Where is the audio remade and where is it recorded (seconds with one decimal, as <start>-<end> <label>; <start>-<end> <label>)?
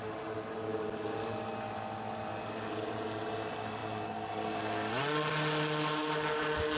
0.0-6.8 recorded